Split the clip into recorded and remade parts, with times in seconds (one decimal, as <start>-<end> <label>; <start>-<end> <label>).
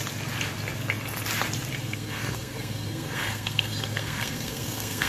0.0-1.8 recorded; 1.8-5.1 remade